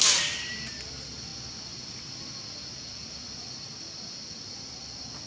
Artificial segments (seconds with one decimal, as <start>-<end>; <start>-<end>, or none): none